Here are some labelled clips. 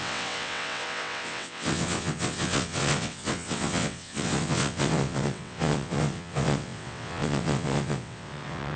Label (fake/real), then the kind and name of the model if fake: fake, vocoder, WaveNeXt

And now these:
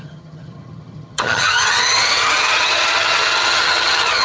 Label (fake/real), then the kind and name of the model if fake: fake, vocoder, HiFi-GAN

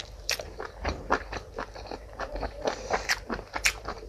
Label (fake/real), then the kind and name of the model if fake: fake, vocoder, BigVGAN v2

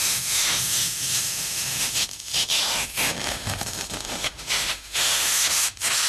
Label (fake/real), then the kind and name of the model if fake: fake, autoencoder, DAC-VAE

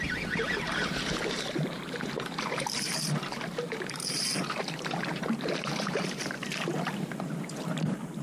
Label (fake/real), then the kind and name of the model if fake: fake, vocoder, BigVGAN v2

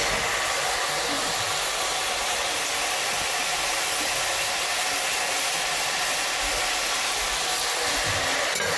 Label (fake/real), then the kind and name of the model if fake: real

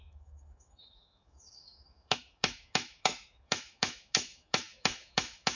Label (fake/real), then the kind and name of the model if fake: fake, autoencoder, DAC-VAE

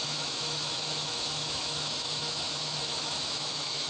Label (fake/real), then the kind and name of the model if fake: fake, autoencoder, DAC-VAE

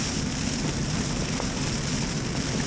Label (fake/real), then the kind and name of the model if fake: real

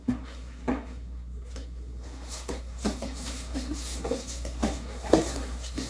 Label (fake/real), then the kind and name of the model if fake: fake, codec, SNAC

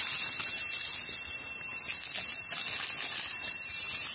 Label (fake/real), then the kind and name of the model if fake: real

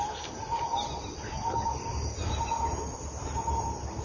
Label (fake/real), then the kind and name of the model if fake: real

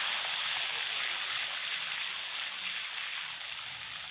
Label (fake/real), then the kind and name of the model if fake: real